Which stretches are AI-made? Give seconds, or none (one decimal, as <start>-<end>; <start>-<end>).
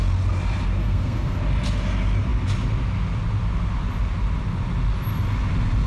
0.8-1.4